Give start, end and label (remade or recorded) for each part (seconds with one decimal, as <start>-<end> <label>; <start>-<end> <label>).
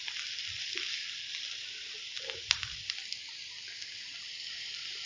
0.0-5.1 recorded